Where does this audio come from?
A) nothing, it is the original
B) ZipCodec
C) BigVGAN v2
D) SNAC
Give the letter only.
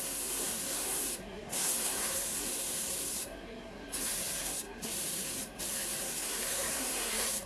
D